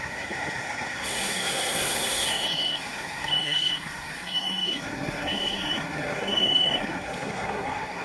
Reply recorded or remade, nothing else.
remade